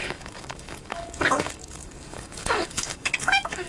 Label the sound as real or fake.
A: fake